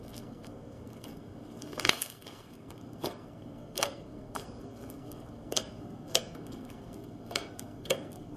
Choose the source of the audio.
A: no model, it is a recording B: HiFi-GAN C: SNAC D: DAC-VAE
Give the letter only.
C